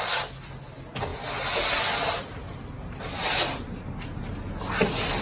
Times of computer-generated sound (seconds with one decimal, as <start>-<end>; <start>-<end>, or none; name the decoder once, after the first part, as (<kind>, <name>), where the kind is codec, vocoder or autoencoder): none